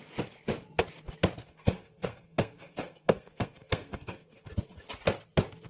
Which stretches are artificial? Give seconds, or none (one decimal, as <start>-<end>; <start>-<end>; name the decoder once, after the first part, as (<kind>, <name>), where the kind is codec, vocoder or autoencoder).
1.4-4.5 (codec, SNAC)